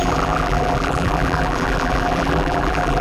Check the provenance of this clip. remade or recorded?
remade